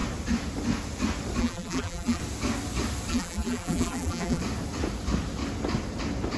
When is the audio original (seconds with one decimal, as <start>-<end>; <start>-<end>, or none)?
0.0-1.4; 2.2-3.1; 4.4-6.4